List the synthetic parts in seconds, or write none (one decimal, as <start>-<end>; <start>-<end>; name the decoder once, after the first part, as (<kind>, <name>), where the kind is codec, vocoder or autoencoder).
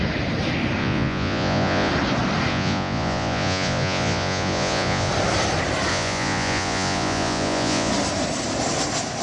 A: 0.8-1.9 (vocoder, Vocos); 2.5-5.1; 5.9-7.9